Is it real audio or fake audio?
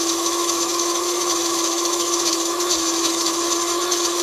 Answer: fake